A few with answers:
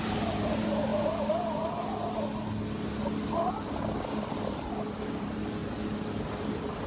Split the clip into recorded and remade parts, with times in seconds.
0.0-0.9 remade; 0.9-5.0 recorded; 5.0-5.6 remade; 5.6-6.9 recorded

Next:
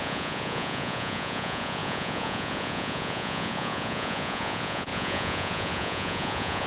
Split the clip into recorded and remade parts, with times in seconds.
0.0-6.7 remade

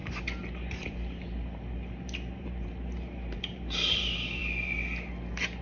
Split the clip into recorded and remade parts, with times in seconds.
0.0-4.4 remade; 4.4-5.6 recorded